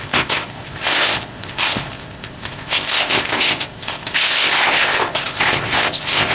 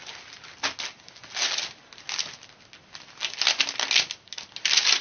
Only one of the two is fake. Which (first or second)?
first